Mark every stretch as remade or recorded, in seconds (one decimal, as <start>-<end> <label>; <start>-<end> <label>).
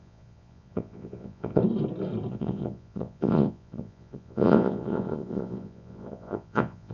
0.0-1.6 remade; 1.6-2.3 recorded; 2.3-6.9 remade